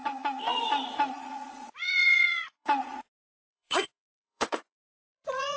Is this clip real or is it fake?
fake